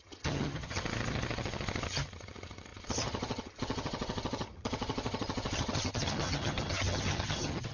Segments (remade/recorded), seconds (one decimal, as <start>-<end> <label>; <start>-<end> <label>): 0.0-7.7 remade